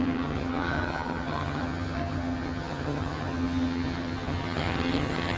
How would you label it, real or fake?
fake